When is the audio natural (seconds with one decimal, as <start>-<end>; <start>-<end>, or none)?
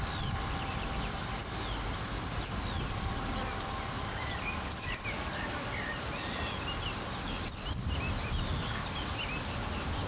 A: 0.0-10.1